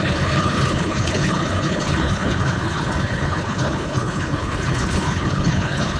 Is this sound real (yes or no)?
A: no